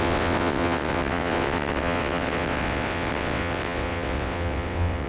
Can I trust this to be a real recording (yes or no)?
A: no